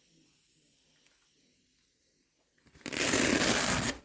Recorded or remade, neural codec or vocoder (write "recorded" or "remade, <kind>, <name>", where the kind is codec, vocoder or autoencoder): recorded